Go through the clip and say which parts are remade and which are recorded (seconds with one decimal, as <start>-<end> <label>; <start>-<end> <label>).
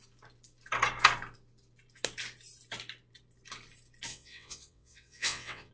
0.0-4.1 recorded; 4.1-5.7 remade